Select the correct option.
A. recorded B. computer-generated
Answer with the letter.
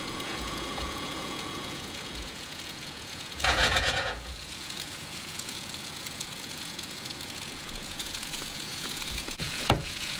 B